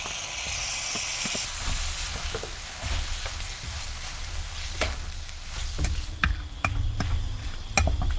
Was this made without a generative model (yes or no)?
yes